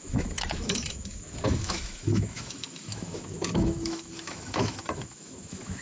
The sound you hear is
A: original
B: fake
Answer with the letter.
B